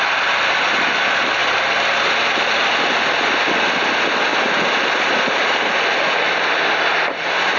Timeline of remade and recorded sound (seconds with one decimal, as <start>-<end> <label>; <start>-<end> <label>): 0.0-7.6 recorded